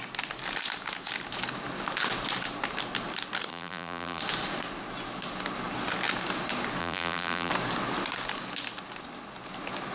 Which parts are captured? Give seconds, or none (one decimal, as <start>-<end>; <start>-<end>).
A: 0.0-3.5; 4.2-6.8; 7.5-9.9